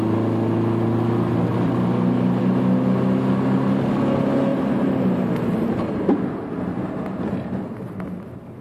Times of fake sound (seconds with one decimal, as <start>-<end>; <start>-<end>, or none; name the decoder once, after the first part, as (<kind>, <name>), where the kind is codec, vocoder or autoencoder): 1.5-2.4 (vocoder, BigVGAN v2); 4.5-8.0